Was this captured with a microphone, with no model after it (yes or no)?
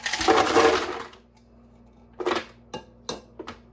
yes